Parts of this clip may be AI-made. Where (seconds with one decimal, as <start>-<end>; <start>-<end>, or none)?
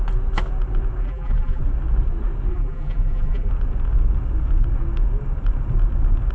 1.0-1.6; 2.5-3.5